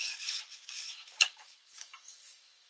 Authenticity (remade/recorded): remade